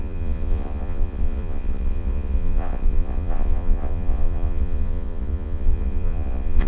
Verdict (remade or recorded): remade